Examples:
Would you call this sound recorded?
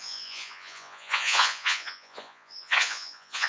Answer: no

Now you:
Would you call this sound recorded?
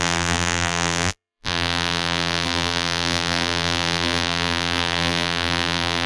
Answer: no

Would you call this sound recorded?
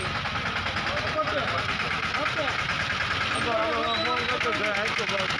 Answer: yes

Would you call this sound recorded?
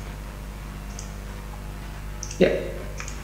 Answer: yes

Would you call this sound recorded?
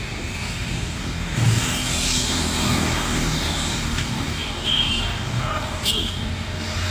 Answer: no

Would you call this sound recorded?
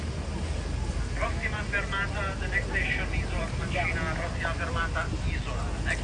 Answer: yes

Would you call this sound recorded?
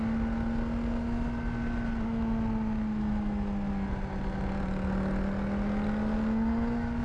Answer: yes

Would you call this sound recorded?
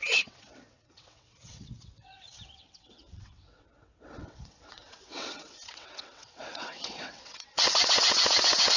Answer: no